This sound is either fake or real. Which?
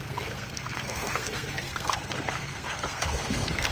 fake